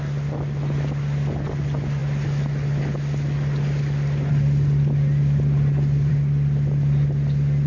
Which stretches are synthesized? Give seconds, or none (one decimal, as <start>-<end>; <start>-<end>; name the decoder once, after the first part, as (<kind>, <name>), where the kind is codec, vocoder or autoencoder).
none